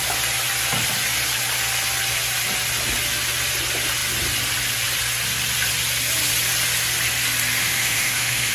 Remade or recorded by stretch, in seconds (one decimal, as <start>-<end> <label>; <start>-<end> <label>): 0.0-7.6 recorded; 7.6-8.5 remade

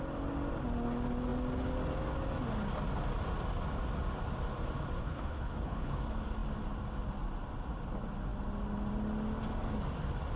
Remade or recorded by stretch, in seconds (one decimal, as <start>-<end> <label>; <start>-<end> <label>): 0.0-5.0 recorded; 5.0-6.0 remade; 6.0-10.4 recorded

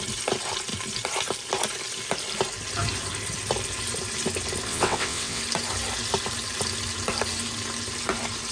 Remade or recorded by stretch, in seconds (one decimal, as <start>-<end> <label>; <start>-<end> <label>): 0.0-4.7 recorded; 4.7-5.4 remade; 5.4-8.5 recorded

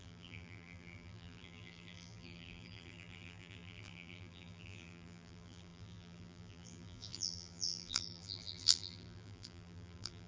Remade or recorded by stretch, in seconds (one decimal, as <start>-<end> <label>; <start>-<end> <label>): 0.0-10.3 remade

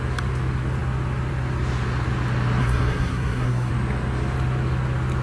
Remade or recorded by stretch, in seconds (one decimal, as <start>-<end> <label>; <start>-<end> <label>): 0.0-2.6 recorded; 2.6-3.7 remade; 3.7-5.2 recorded

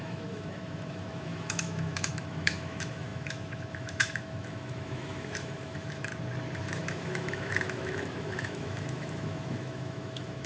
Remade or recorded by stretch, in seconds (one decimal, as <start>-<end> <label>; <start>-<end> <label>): 0.0-6.1 remade; 6.1-6.6 recorded; 6.6-10.5 remade